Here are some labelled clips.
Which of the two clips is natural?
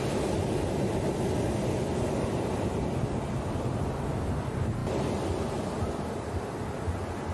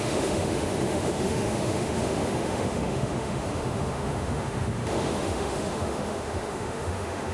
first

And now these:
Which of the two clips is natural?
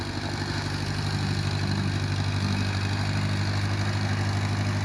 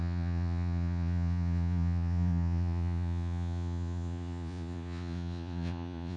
first